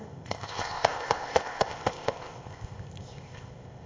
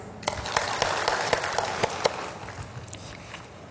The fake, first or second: first